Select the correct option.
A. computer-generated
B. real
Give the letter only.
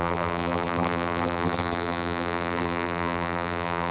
A